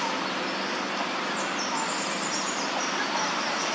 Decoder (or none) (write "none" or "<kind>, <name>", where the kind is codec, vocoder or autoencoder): none